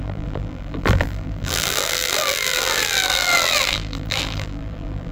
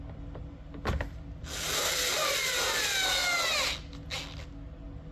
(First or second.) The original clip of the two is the second